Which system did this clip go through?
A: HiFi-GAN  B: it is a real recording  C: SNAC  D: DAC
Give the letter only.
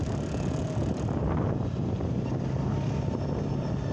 B